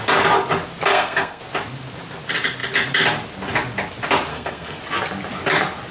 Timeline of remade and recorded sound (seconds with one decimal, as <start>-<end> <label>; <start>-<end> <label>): 0.0-0.9 recorded; 0.9-1.4 remade; 1.4-4.3 recorded; 4.3-4.8 remade; 4.8-5.9 recorded